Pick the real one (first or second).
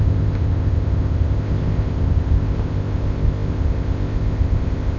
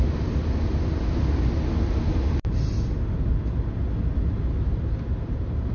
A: second